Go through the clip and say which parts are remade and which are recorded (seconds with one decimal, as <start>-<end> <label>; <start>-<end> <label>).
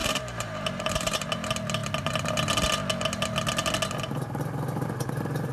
0.0-1.3 remade; 1.3-5.5 recorded